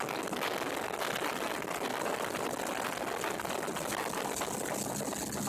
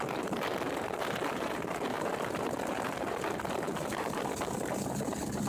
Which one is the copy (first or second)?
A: second